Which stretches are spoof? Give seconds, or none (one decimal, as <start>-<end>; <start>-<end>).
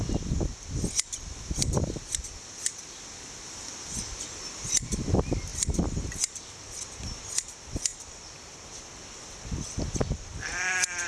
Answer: none